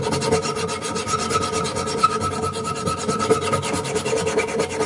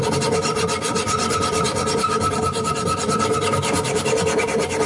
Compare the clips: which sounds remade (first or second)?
second